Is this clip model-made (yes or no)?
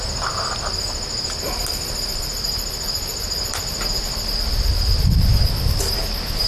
no